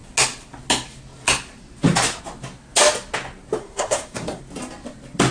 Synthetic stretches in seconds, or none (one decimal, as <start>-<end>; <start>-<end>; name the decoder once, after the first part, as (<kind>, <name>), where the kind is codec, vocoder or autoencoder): 3.6-4.4 (codec, SNAC)